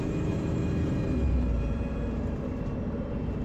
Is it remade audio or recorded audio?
remade